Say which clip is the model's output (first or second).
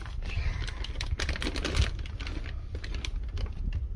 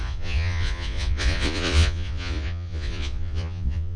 second